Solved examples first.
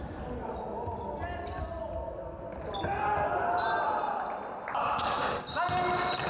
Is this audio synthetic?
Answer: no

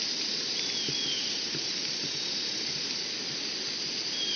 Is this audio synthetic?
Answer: no